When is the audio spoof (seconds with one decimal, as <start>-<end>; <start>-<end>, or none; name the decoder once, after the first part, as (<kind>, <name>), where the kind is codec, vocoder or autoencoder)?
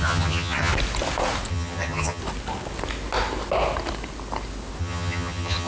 0.0-0.7 (vocoder, HiFi-GAN); 1.5-2.2; 4.8-5.7